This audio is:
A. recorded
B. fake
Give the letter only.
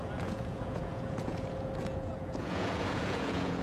B